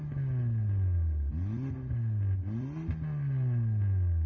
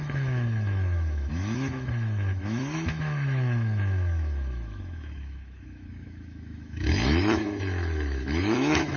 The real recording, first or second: first